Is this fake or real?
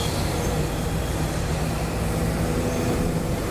fake